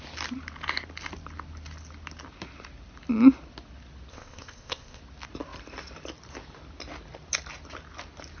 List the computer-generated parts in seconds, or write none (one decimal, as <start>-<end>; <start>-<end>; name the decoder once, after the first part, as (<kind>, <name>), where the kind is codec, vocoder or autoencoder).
4.1-5.0 (codec, ZipCodec)